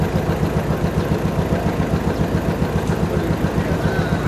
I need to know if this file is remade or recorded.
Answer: recorded